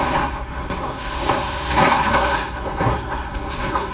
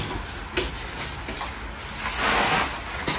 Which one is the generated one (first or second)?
first